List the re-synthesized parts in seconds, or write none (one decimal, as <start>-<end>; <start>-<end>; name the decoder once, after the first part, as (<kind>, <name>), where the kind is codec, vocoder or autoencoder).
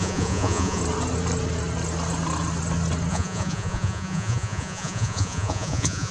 0.0-0.8 (vocoder, Vocos); 3.1-6.1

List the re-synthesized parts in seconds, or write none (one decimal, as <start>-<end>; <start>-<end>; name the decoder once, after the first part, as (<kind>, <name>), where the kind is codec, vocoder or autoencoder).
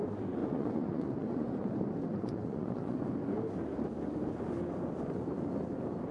0.4-1.7 (vocoder, Vocos); 2.1-3.0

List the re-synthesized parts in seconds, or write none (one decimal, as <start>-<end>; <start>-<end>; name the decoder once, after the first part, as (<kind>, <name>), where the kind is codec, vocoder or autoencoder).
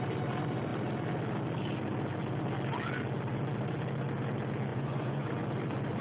4.7-5.3 (vocoder, Vocos)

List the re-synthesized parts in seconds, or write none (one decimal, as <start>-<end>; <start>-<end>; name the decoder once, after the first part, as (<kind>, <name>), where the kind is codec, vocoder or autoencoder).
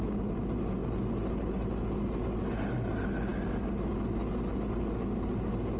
none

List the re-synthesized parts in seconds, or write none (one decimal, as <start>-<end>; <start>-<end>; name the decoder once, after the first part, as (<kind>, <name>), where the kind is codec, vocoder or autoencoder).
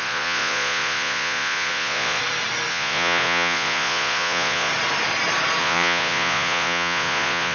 0.0-2.2 (vocoder, Vocos); 2.7-4.7; 5.6-7.5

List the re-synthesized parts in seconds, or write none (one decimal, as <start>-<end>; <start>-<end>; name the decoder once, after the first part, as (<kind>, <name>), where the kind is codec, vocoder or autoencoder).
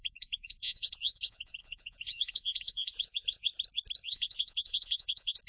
0.0-3.5 (vocoder, Vocos); 4.0-5.5